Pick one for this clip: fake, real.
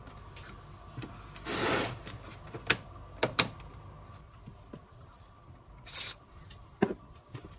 real